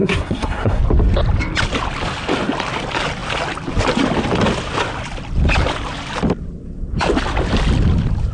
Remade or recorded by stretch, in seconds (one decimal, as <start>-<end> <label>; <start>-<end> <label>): 0.0-0.8 remade; 0.8-8.3 recorded